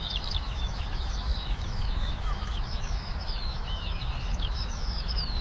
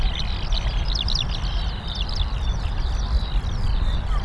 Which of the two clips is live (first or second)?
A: second